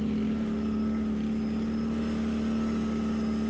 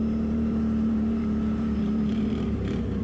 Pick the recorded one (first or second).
first